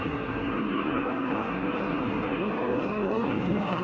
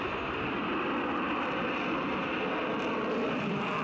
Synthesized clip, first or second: first